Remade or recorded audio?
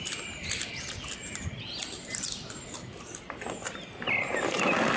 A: recorded